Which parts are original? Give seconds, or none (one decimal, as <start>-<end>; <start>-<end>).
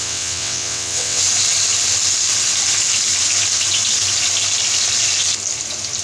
1.2-6.0